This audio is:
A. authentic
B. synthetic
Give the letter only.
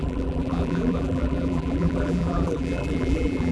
B